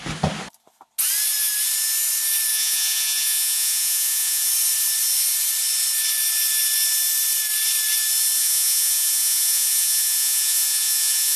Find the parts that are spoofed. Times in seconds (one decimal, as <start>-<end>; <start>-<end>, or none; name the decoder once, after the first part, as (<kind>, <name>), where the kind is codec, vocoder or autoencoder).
2.5-4.5 (vocoder, Vocos); 8.4-11.4